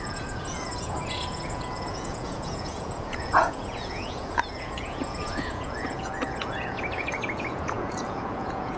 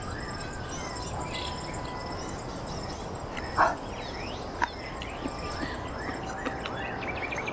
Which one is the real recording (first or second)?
second